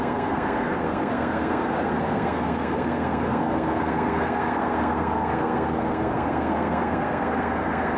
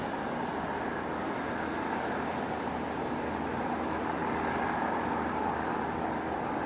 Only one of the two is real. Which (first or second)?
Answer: second